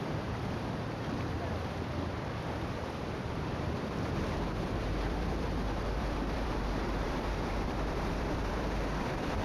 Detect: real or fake fake